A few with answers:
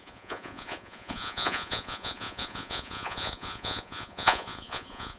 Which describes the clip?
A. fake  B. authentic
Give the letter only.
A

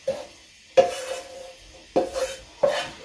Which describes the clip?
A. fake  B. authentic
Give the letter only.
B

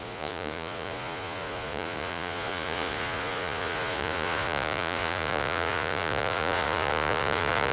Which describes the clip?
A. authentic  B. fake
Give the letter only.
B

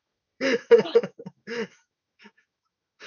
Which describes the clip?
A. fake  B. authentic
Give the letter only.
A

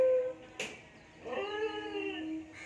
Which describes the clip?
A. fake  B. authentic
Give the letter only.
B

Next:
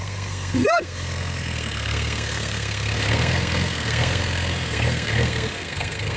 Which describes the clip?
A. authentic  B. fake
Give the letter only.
B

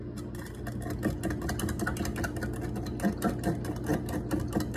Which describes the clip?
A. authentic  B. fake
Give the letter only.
A